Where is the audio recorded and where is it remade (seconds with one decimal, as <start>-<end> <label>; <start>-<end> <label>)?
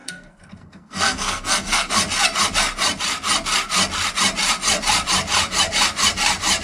0.0-1.9 remade; 1.9-6.6 recorded